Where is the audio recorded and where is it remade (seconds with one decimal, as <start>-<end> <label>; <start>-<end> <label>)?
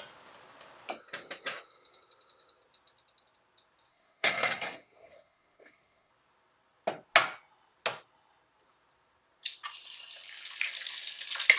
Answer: 0.0-3.9 recorded; 3.9-6.1 remade; 6.1-11.6 recorded